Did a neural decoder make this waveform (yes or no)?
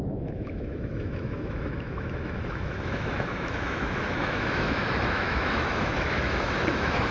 yes